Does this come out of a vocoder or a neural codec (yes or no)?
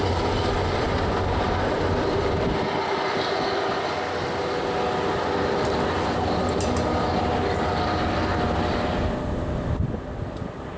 no